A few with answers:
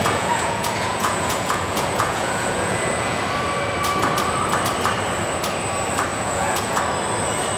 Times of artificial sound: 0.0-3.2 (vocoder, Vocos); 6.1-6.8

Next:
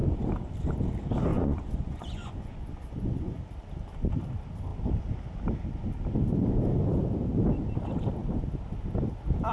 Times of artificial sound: 1.3-3.4 (vocoder, Vocos)

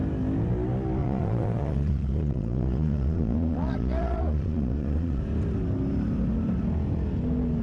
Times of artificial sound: 1.0-5.2 (vocoder, Vocos)

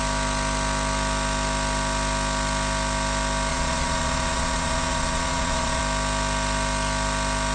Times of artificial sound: 3.5-5.8 (vocoder, Vocos)

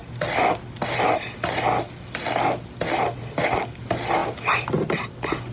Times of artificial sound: none

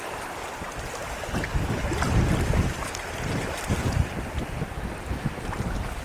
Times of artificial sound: none